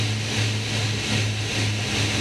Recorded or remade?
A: recorded